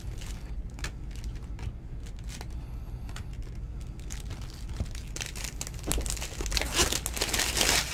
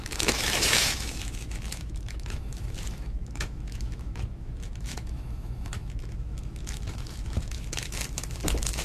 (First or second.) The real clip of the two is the first